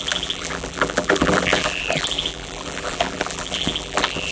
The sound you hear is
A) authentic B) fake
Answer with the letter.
B